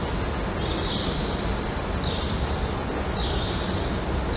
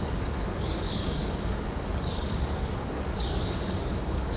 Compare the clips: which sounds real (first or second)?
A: first